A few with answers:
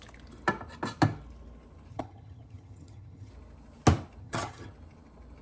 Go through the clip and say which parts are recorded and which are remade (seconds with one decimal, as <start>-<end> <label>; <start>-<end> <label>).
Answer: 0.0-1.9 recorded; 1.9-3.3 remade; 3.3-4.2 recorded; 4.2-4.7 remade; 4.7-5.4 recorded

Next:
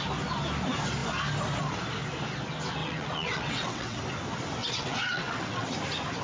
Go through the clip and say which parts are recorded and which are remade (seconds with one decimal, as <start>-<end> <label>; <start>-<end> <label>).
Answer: 0.0-2.8 recorded; 2.8-4.0 remade; 4.0-4.6 recorded; 4.6-5.7 remade; 5.7-6.2 recorded

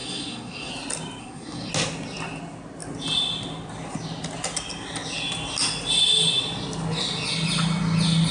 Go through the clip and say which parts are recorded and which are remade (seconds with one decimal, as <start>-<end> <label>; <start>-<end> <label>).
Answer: 0.0-0.7 remade; 0.7-1.2 recorded; 1.2-1.7 remade; 1.7-8.3 recorded